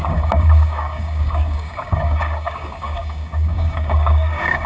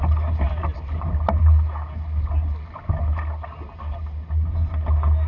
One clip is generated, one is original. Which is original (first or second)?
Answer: second